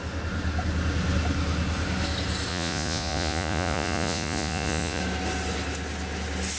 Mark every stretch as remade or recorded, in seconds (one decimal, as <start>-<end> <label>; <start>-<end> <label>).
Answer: 0.0-2.5 recorded; 2.5-5.0 remade; 5.0-6.6 recorded